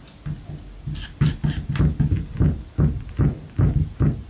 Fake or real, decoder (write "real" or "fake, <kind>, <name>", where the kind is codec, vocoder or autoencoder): real